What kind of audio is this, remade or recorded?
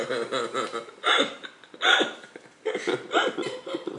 recorded